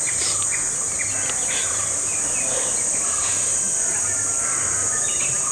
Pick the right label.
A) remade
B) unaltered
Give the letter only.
B